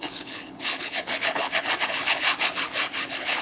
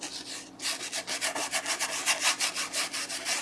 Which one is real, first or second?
second